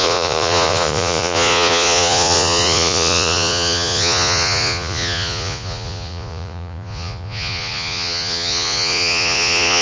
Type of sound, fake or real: fake